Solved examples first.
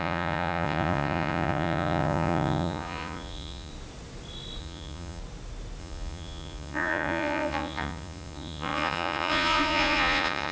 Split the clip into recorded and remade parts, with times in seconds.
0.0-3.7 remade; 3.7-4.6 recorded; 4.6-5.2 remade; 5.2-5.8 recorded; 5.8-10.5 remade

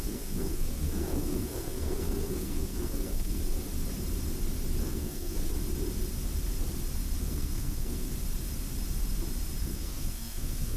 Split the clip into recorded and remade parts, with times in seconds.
0.0-3.4 remade; 3.4-4.8 recorded; 4.8-5.5 remade; 5.5-7.2 recorded; 7.2-8.1 remade; 8.1-9.6 recorded; 9.6-10.8 remade

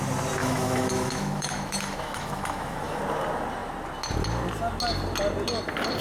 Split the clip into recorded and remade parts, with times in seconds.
0.0-0.4 recorded; 0.4-3.0 remade; 3.0-6.0 recorded